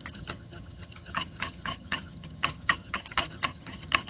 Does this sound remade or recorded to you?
remade